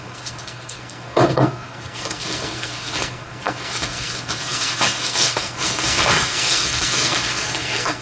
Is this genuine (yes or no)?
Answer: no